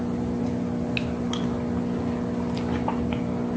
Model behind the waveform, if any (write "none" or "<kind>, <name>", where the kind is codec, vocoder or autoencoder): none